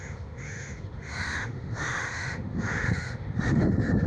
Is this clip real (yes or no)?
no